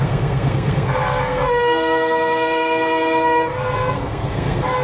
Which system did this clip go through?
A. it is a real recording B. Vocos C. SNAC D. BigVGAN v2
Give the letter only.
C